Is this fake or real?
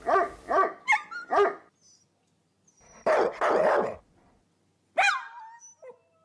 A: real